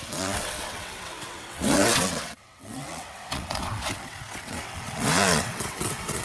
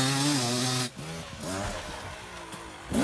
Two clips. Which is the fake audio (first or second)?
first